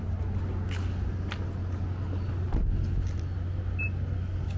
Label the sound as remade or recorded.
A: recorded